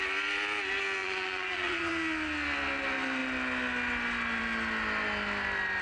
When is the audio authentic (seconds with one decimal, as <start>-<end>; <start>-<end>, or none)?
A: 0.0-1.0; 1.9-5.8